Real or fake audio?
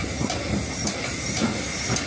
real